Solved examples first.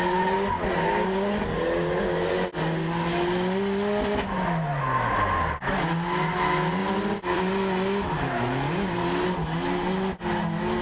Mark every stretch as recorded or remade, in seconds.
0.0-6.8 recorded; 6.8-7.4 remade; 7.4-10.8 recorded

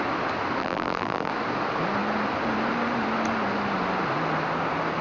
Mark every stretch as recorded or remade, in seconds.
0.0-0.6 recorded; 0.6-1.3 remade; 1.3-5.0 recorded

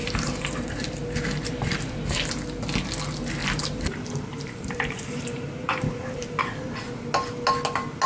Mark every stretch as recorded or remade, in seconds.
0.0-2.3 remade; 2.3-3.4 recorded; 3.4-6.4 remade; 6.4-8.1 recorded

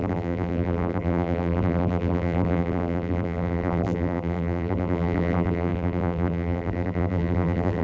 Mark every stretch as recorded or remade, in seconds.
0.0-7.8 remade